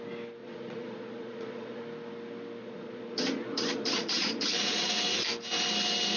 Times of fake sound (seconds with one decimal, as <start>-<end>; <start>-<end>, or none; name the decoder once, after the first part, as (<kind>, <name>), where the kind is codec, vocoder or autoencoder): 0.4-1.8 (vocoder, Vocos); 2.6-4.9